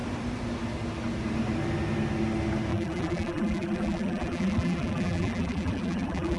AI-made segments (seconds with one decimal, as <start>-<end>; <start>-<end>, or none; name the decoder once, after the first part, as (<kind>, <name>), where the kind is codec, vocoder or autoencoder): 2.7-6.4 (vocoder, BigVGAN v2)